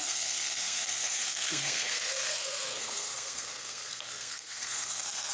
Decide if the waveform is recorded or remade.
remade